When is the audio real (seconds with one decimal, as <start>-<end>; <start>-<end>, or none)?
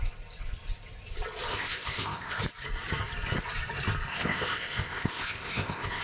0.0-1.5; 2.4-4.1